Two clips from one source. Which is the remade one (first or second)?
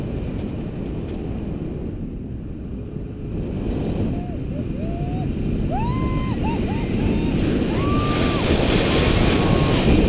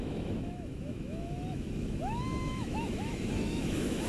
second